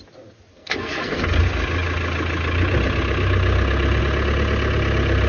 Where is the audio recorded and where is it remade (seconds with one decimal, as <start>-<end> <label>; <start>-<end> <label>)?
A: 0.0-0.5 recorded; 0.5-1.2 remade; 1.2-5.3 recorded